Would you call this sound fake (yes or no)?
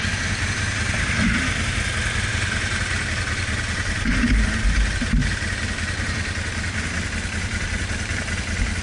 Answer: no